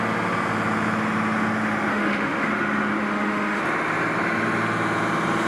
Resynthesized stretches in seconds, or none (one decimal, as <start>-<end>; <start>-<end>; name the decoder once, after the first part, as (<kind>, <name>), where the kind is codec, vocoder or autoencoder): 1.9-2.5 (autoencoder, DAC-VAE); 3.0-3.6